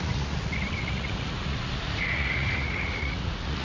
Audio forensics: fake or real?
fake